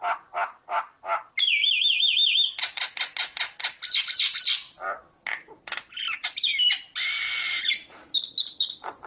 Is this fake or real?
real